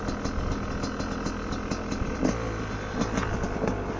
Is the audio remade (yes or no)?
no